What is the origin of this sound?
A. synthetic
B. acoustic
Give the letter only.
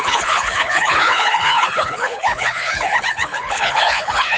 A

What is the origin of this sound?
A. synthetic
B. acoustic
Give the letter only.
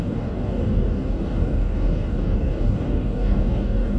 A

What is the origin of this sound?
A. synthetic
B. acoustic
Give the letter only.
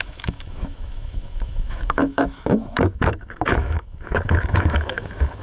A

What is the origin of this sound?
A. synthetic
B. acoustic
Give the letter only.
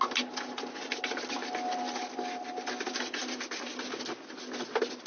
B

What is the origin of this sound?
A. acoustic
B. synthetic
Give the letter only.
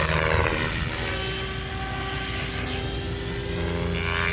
A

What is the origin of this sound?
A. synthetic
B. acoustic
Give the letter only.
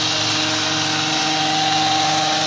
B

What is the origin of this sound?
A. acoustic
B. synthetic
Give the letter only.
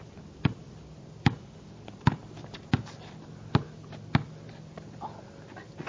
A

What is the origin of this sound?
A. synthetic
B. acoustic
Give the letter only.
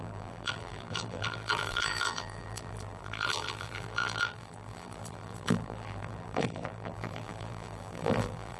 A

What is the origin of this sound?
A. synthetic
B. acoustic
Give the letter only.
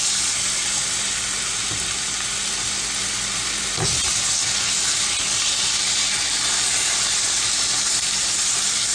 A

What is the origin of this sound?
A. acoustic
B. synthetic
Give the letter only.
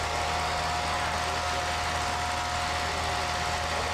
A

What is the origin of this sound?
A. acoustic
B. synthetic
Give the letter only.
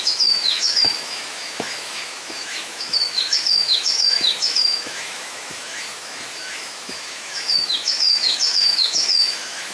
B